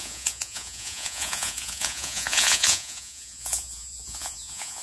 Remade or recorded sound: remade